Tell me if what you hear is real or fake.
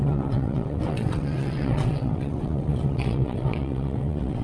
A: fake